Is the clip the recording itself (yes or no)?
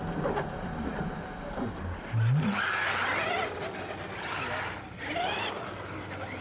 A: yes